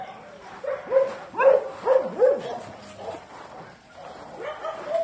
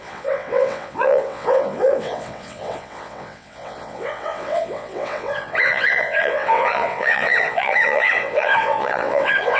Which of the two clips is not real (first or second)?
second